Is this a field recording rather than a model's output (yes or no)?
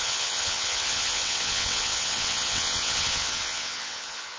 no